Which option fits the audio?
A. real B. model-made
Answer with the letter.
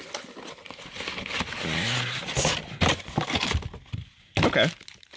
A